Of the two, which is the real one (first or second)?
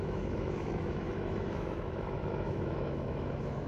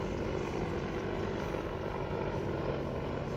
second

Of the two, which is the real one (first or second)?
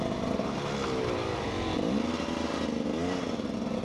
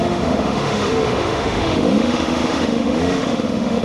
first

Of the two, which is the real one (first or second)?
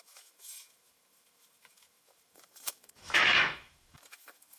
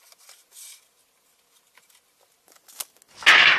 second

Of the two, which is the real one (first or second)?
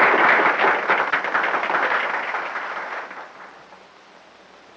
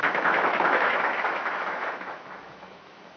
first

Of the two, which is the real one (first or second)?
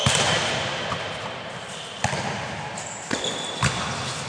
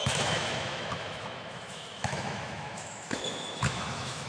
first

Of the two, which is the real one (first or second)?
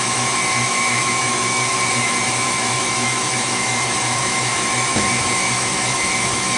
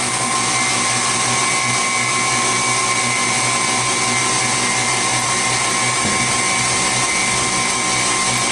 second